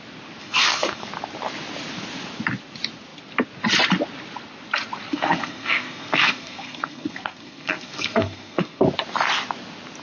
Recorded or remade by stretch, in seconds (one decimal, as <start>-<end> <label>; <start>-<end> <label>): 0.0-0.4 recorded; 0.4-1.1 remade; 1.1-5.1 recorded; 5.1-8.8 remade; 8.8-10.0 recorded